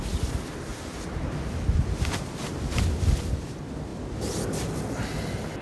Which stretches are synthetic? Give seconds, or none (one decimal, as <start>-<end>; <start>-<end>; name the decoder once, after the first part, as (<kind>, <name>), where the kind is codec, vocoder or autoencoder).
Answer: 0.7-3.3 (vocoder, BigVGAN v2)